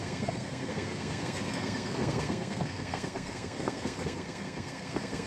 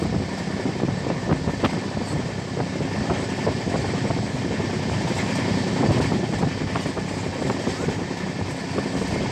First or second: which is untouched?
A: second